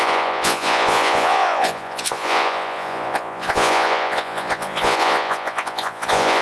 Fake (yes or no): yes